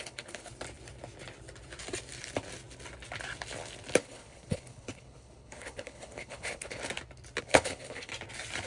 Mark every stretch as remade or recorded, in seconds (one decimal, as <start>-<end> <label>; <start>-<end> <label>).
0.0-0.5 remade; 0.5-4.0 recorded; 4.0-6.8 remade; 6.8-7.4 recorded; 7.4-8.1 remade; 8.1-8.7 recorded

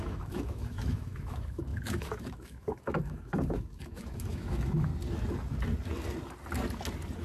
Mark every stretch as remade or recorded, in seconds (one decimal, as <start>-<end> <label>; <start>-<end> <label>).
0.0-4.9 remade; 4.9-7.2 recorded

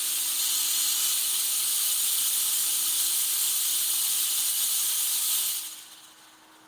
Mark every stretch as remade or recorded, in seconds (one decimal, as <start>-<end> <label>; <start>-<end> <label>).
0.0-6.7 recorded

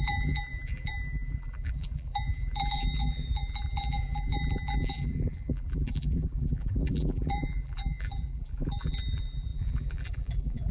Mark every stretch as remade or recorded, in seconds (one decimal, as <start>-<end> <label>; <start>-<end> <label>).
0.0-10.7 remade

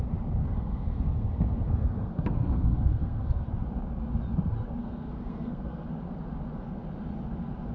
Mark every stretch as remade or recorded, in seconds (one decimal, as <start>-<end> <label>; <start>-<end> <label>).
0.0-0.4 recorded; 0.4-3.5 remade; 3.5-4.8 recorded; 4.8-5.9 remade; 5.9-7.7 recorded

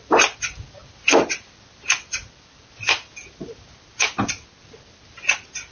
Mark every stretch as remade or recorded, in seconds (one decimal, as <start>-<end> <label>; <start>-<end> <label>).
0.0-5.7 recorded